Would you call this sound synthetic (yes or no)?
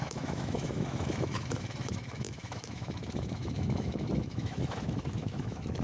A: yes